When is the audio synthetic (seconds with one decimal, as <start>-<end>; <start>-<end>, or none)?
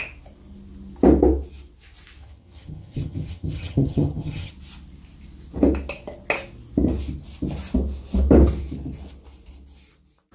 2.2-4.5